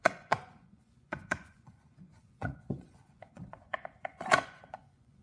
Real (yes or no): no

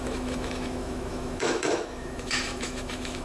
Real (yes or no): no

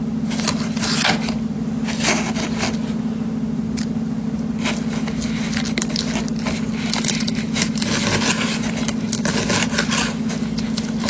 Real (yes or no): yes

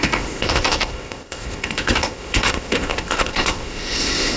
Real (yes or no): no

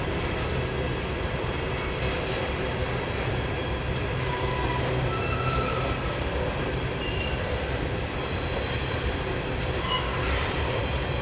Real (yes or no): yes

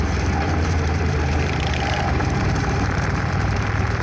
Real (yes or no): no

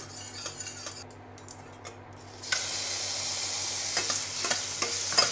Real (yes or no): yes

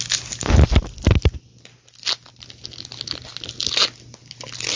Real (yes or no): yes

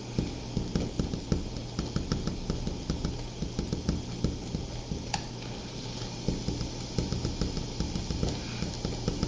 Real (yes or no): yes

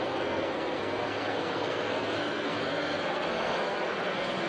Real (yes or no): no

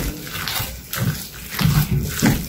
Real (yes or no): yes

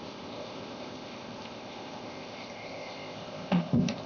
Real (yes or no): no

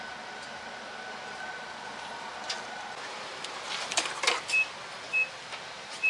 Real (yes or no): yes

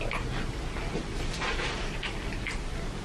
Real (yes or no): yes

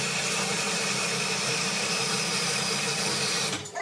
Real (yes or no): no